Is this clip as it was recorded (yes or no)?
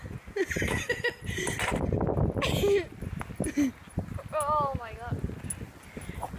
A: yes